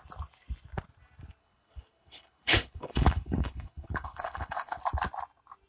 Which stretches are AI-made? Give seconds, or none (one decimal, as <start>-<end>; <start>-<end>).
1.4-4.8